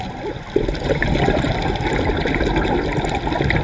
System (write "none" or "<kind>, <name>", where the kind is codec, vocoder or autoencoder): none